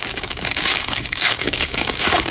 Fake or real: fake